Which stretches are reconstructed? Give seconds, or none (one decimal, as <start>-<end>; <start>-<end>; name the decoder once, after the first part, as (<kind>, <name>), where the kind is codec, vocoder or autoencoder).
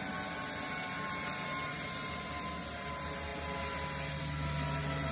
none